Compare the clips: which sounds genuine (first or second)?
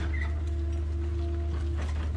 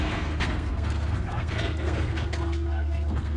first